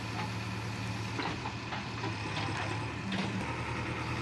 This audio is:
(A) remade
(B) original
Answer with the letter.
B